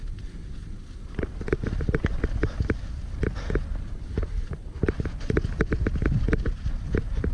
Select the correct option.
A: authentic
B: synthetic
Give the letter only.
A